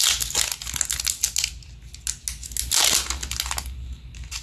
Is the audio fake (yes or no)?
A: no